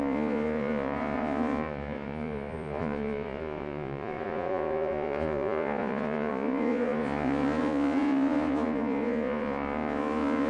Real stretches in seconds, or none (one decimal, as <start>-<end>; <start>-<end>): none